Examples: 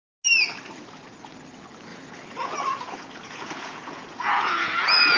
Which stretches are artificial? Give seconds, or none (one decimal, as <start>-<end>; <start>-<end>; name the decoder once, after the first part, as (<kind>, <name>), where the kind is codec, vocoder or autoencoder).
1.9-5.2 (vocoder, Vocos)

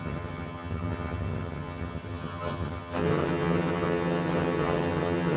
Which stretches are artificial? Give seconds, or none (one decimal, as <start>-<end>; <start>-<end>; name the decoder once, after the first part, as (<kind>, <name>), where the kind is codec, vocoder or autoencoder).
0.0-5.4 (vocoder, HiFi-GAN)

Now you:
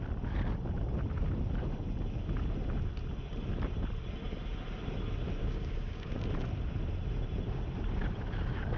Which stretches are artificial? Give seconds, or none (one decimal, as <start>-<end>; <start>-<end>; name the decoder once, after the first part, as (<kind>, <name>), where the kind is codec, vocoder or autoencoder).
5.4-6.1 (codec, DAC)